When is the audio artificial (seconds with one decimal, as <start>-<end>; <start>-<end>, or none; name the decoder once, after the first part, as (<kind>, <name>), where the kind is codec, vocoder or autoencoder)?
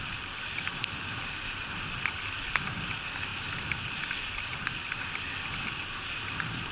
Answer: none